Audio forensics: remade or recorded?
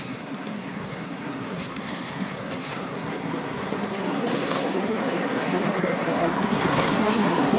remade